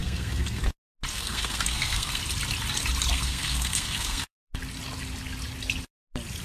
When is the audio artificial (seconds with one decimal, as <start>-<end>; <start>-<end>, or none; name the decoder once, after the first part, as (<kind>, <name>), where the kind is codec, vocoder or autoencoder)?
0.0-0.6 (codec, SNAC); 1.1-2.2; 3.1-4.5